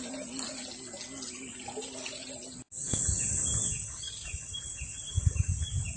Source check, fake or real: real